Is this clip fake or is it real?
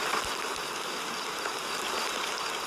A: real